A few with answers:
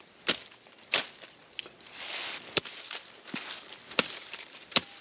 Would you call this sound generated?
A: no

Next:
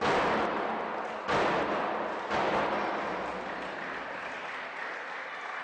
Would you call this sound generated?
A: no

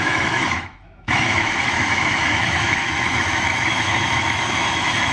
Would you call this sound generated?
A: yes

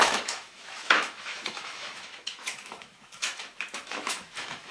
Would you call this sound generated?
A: yes